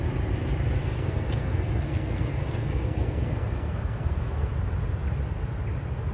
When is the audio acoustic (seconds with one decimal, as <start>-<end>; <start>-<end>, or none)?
0.0-0.8; 4.5-6.1